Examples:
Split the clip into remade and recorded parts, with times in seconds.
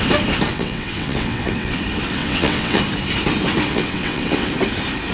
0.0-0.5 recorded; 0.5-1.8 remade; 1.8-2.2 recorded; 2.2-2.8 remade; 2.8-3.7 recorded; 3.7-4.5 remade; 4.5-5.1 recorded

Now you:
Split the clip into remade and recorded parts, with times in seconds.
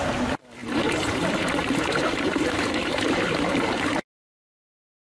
0.0-0.6 recorded; 0.6-3.7 remade; 3.7-5.1 recorded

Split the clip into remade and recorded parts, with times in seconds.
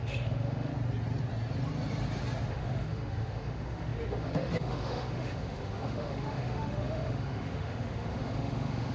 0.0-0.7 remade; 0.7-2.5 recorded; 2.5-8.9 remade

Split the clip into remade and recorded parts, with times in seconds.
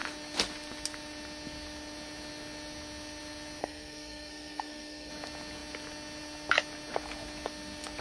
0.0-3.6 recorded; 3.6-5.1 remade; 5.1-8.0 recorded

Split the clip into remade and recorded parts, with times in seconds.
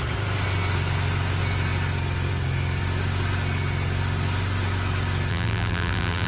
0.0-5.3 recorded; 5.3-6.3 remade